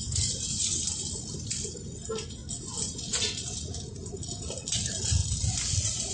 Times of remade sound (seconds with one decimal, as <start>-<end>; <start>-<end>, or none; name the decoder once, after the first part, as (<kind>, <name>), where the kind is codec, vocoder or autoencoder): 0.0-2.4 (vocoder, BigVGAN v2); 4.4-5.2